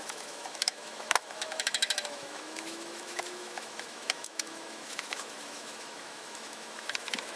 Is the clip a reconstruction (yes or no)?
yes